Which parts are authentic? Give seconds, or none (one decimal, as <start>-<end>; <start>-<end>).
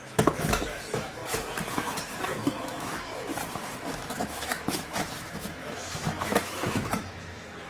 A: 1.2-1.7; 3.3-3.9